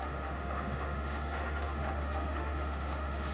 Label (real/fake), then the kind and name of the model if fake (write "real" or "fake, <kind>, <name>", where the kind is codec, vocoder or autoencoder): fake, autoencoder, DAC-VAE